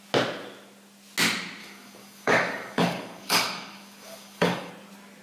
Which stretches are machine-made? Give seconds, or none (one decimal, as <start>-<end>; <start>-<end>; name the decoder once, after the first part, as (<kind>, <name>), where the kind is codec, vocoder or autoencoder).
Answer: 1.6-4.7 (codec, DAC)